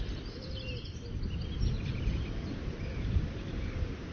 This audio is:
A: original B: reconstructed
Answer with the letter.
A